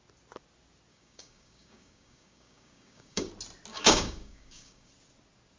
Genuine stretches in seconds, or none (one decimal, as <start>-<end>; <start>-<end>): 0.0-0.9; 3.3-3.7; 4.9-5.6